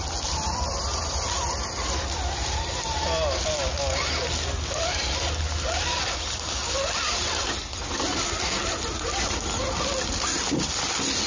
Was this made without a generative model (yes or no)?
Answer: yes